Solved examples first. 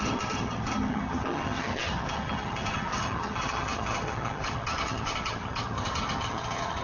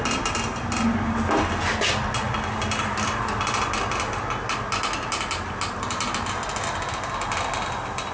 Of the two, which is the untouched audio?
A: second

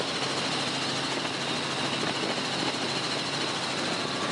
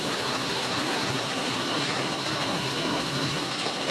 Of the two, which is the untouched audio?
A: first